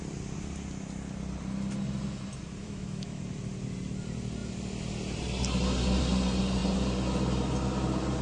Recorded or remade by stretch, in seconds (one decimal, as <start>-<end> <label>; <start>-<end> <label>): 0.0-2.6 recorded; 2.6-3.2 remade; 3.2-8.2 recorded